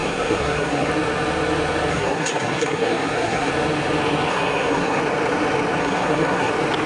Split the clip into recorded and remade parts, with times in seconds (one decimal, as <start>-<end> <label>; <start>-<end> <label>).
0.0-0.9 remade; 0.9-1.9 recorded; 1.9-3.5 remade; 3.5-4.3 recorded; 4.3-5.0 remade; 5.0-5.8 recorded; 5.8-6.5 remade; 6.5-6.9 recorded